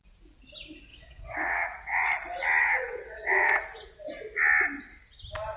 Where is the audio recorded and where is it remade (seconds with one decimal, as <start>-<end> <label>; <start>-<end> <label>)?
0.0-0.9 recorded; 0.9-2.0 remade; 2.0-2.6 recorded; 2.6-3.6 remade; 3.6-5.6 recorded